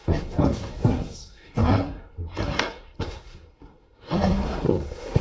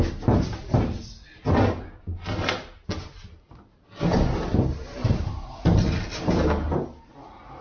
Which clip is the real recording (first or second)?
second